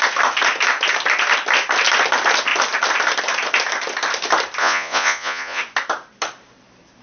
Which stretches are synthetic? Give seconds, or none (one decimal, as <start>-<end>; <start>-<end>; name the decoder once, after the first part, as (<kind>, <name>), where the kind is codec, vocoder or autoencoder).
4.6-5.6 (vocoder, Vocos)